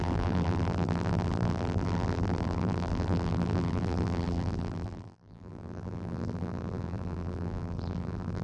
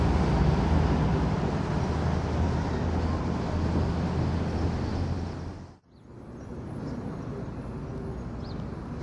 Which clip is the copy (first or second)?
first